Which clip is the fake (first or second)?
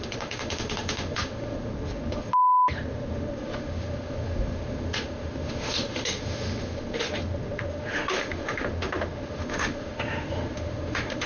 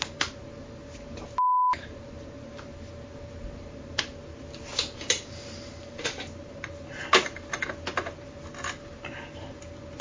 first